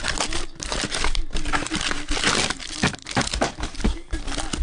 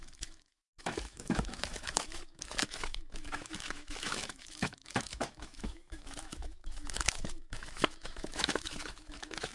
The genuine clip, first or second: first